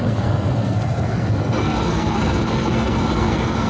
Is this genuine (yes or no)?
no